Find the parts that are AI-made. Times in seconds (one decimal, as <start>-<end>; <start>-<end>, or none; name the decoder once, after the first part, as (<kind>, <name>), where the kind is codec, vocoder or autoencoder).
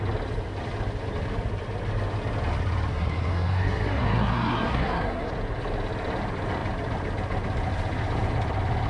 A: 2.9-5.3 (codec, SNAC)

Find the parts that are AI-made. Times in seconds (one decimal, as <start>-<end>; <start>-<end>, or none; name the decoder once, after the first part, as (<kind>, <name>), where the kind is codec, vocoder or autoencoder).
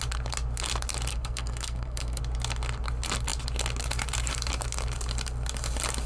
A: 1.1-2.2 (codec, SNAC)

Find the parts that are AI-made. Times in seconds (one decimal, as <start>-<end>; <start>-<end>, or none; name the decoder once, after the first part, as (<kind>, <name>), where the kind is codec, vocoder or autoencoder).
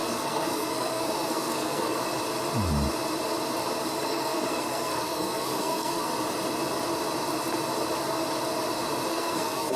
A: 0.0-2.0 (codec, SNAC); 4.0-6.1; 9.1-9.8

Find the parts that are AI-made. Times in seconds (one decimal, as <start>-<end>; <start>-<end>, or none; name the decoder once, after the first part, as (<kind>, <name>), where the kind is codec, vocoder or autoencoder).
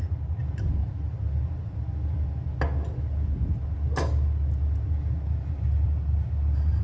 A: none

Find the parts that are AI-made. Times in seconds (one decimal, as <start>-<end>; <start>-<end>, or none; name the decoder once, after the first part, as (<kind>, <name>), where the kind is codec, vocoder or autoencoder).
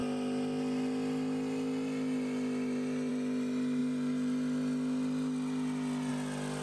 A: none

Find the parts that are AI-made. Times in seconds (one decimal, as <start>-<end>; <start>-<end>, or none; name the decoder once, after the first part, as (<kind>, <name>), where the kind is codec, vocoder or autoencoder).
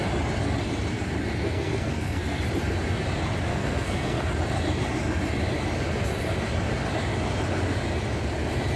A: 1.4-2.4 (codec, SNAC); 3.5-4.3